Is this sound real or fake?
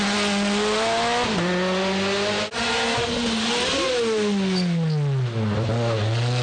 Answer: real